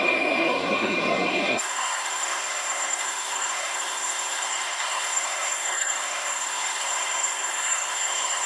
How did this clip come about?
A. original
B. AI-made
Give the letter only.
B